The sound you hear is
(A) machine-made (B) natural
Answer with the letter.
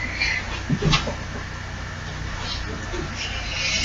B